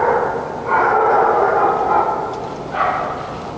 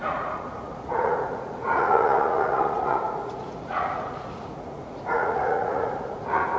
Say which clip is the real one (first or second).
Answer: first